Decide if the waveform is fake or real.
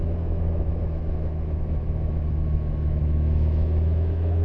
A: fake